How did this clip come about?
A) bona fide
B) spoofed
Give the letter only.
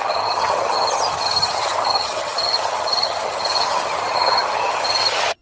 B